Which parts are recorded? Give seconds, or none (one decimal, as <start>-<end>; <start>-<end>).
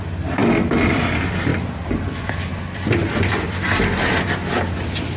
0.4-0.9